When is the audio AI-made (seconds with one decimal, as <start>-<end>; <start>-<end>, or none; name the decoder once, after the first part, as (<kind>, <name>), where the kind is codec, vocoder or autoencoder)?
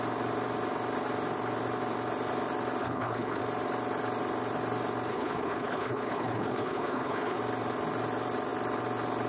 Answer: 2.8-3.4 (codec, HILCodec); 5.1-7.4